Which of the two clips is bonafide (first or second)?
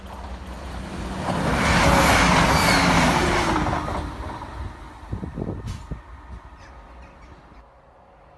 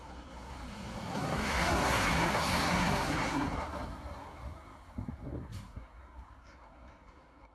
first